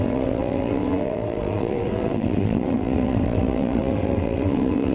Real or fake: fake